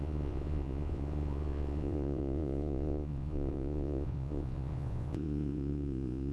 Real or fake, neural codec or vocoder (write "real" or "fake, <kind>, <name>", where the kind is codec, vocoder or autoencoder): fake, vocoder, Vocos